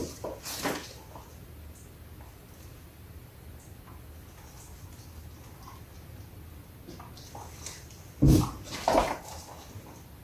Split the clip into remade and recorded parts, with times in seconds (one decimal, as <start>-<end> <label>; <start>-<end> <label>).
0.0-10.2 recorded